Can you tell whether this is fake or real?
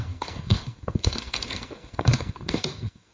fake